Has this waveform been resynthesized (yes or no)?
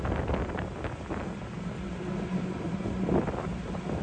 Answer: no